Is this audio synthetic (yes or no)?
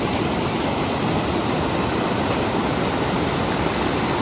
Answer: no